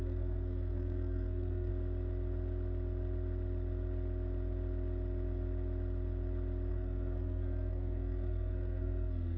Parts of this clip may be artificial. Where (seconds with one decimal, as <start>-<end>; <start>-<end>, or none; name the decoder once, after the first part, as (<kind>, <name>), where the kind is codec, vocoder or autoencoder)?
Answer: 0.0-1.7 (codec, SNAC); 6.7-9.4